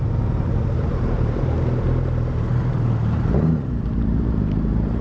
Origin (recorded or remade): remade